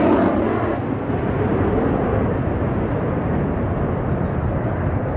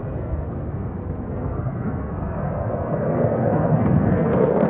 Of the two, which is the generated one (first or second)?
second